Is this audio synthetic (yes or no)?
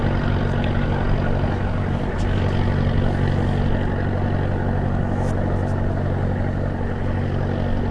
no